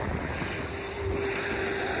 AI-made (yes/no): no